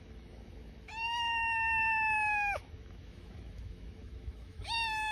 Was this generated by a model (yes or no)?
yes